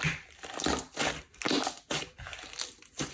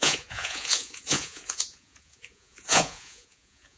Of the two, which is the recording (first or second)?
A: first